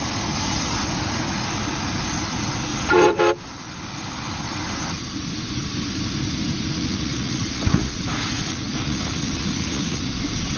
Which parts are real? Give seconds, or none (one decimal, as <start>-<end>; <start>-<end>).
0.0-2.7; 3.2-6.7; 10.0-10.6